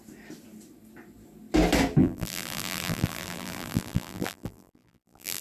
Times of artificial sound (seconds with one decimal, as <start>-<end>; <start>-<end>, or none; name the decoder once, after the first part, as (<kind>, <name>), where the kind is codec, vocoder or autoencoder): 2.0-5.4 (vocoder, BigVGAN v2)